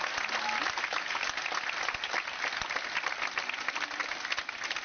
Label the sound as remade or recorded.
recorded